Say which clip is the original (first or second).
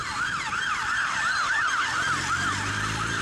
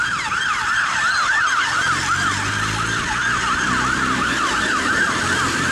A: second